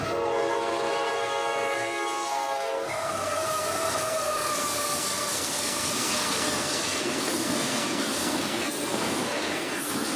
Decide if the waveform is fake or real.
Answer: fake